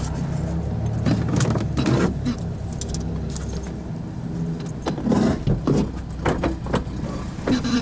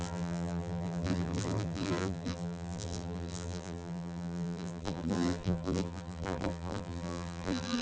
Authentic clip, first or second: first